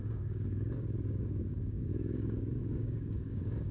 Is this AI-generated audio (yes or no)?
yes